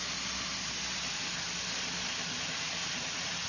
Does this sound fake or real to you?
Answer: real